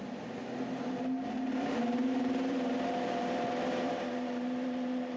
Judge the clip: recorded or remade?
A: remade